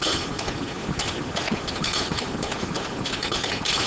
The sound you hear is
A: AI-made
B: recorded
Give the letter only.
B